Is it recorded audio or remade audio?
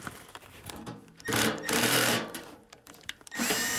remade